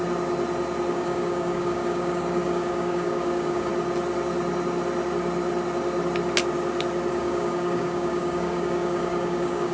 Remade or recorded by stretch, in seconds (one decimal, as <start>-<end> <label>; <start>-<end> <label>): 0.0-0.9 recorded; 0.9-3.7 remade; 3.7-7.1 recorded; 7.1-9.7 remade